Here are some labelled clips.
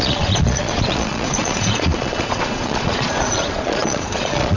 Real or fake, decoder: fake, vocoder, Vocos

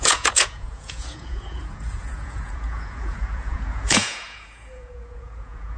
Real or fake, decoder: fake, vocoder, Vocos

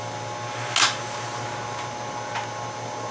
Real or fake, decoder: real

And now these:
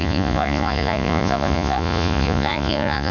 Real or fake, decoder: fake, vocoder, Vocos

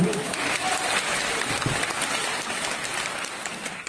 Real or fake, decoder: fake, vocoder, BigVGAN v2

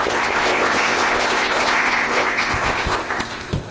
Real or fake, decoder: fake, codec, ZipCodec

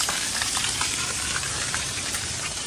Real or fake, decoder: fake, vocoder, BigVGAN v2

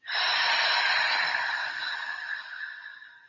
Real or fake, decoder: real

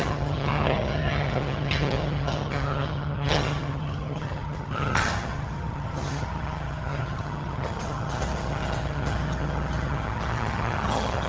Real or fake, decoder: fake, vocoder, HiFi-GAN